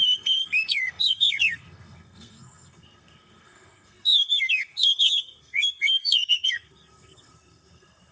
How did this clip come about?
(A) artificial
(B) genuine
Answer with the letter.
A